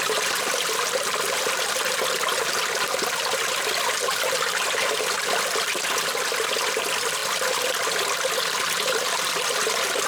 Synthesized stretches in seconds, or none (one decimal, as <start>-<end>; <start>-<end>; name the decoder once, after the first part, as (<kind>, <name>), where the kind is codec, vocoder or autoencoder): none